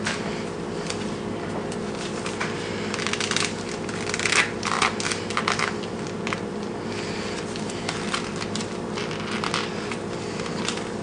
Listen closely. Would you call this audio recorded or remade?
recorded